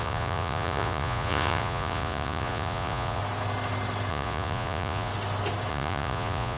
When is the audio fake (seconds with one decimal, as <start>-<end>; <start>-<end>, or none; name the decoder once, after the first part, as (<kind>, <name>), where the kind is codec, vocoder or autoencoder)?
0.0-3.2 (vocoder, Vocos); 4.1-5.1; 5.7-6.6